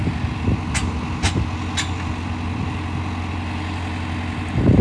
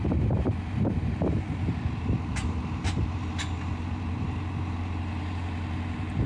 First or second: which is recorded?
first